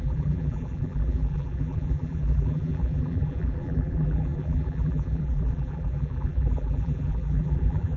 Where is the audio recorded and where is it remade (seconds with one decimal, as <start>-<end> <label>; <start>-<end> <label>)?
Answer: 0.0-8.0 remade